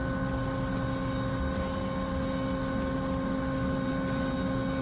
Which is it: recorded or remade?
recorded